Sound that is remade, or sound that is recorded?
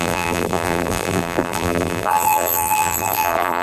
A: remade